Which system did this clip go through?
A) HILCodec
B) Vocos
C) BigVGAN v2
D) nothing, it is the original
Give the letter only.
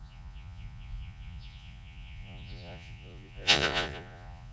B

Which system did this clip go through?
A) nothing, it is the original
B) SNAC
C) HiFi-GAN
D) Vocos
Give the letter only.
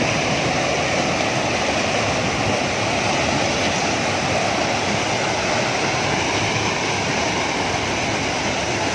A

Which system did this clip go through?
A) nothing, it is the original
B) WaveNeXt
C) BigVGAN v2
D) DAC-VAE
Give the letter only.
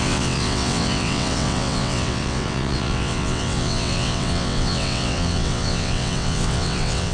B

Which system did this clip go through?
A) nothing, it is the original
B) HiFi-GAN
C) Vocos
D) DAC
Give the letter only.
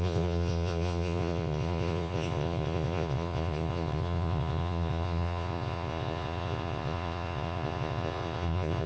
C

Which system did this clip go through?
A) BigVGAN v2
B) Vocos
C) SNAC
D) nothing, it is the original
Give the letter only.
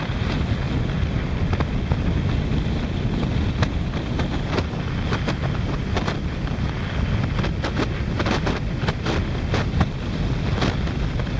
D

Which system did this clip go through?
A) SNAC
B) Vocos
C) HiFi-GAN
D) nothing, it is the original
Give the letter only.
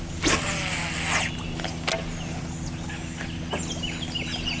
D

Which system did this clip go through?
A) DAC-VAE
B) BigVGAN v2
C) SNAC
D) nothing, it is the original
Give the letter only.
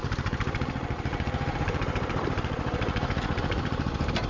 B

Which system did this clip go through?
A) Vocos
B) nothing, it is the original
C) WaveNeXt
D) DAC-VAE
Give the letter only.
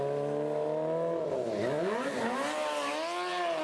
B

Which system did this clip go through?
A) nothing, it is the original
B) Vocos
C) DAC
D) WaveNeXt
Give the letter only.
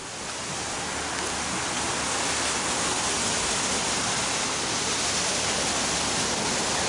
A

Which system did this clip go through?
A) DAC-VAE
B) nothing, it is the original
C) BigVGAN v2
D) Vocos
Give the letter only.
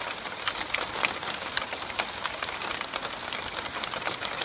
B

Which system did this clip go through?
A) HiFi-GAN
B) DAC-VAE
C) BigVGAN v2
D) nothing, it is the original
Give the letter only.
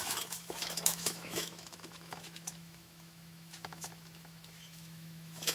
B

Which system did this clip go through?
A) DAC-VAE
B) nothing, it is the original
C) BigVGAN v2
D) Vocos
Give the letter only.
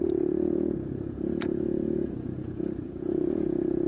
D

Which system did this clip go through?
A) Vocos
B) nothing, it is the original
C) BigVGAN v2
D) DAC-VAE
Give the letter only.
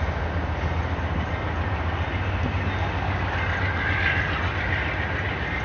B